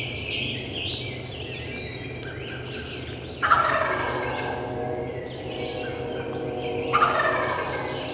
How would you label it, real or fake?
real